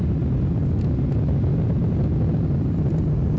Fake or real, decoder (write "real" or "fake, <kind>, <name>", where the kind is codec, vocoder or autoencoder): real